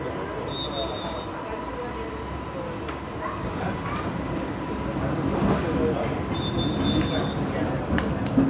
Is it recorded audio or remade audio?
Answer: recorded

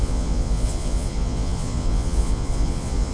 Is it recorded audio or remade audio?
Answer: remade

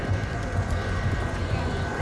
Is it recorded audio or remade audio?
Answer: remade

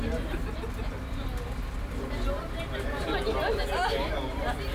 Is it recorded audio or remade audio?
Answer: recorded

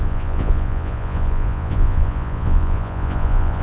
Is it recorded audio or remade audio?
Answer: remade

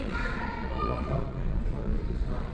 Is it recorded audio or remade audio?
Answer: remade